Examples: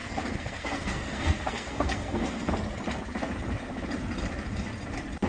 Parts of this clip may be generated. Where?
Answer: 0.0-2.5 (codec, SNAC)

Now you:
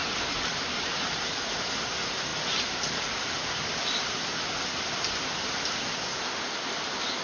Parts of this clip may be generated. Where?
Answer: 0.0-1.0 (vocoder, BigVGAN v2)

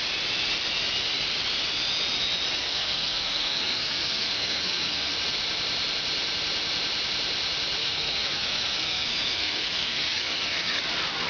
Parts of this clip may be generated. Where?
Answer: 2.6-5.1 (codec, SNAC); 7.8-10.8

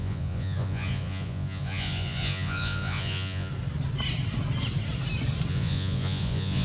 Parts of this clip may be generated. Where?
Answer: 0.0-3.5 (vocoder, Vocos); 5.5-6.6

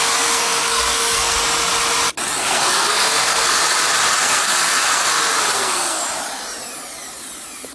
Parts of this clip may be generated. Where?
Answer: 0.0-1.4 (codec, SNAC); 2.4-3.6; 4.2-6.0

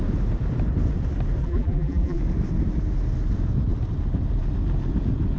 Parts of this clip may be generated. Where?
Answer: 1.4-2.2 (vocoder, BigVGAN v2)

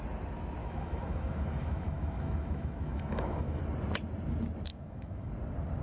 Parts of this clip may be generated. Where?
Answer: 0.6-3.6 (autoencoder, DAC-VAE); 4.7-5.3